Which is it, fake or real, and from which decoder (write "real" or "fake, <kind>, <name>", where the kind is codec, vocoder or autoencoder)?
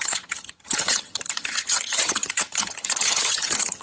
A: fake, vocoder, HiFi-GAN